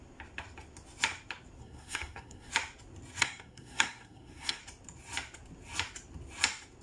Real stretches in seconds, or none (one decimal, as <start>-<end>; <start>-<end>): 0.0-1.6; 2.5-3.2; 4.6-6.8

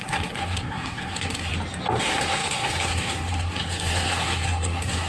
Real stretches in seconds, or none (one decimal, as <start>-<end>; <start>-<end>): 1.5-2.0

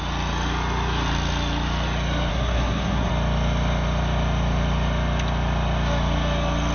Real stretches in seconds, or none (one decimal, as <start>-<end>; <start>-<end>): 0.0-2.3; 3.1-6.7